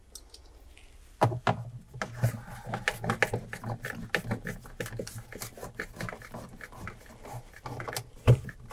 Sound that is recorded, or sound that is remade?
recorded